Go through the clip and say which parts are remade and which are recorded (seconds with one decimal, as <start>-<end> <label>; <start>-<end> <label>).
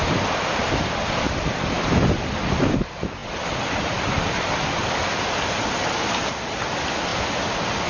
0.0-7.9 recorded